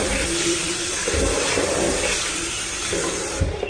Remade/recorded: remade